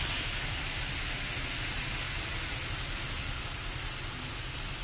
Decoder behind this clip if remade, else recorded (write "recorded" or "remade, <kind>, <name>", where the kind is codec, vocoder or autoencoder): recorded